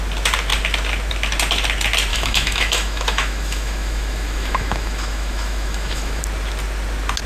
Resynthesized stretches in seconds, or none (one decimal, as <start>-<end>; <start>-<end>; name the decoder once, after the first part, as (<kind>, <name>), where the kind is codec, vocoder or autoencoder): 2.1-6.2 (autoencoder, DAC-VAE)